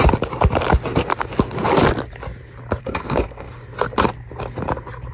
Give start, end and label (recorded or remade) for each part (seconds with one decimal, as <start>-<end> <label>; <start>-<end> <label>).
0.0-2.8 recorded; 2.8-3.5 remade; 3.5-5.1 recorded